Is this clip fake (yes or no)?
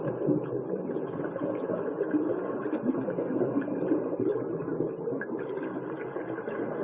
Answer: no